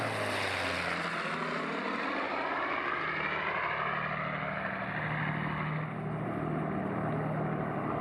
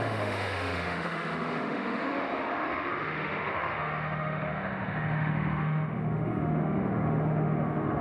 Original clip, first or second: first